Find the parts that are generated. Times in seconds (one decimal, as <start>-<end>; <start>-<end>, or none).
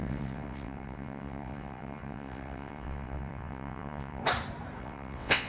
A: 0.0-4.2; 4.8-5.5